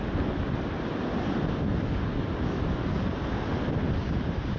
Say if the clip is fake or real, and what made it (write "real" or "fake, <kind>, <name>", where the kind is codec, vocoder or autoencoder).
real